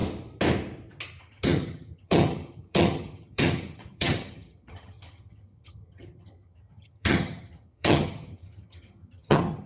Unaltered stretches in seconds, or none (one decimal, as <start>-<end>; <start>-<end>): 0.0-1.2